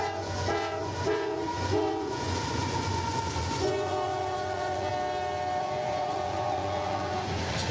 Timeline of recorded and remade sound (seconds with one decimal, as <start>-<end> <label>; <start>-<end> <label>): 0.0-4.9 remade; 4.9-5.6 recorded; 5.6-7.7 remade